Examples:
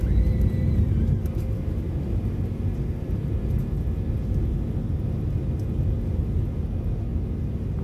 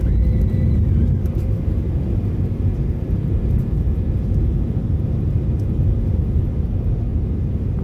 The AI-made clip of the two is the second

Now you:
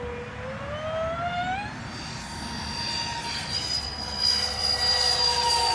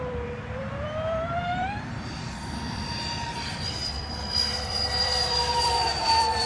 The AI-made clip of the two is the second